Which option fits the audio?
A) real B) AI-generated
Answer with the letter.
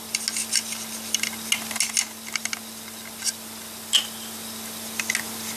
A